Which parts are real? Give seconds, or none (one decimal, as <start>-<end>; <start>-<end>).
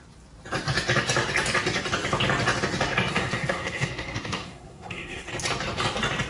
0.0-3.1; 5.3-6.3